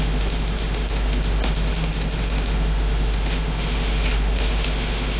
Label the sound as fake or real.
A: fake